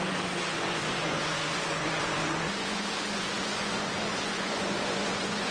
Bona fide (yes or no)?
no